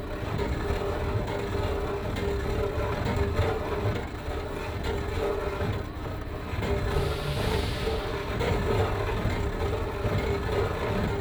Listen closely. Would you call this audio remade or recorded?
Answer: recorded